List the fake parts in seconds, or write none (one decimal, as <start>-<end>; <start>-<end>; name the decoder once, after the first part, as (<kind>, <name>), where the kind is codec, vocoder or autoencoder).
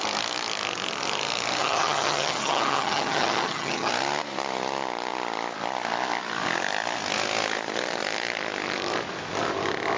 1.6-3.9 (vocoder, HiFi-GAN)